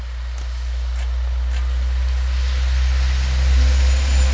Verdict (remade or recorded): recorded